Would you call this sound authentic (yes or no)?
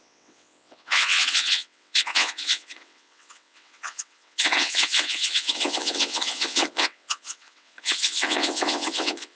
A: no